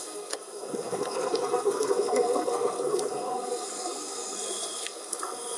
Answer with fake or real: fake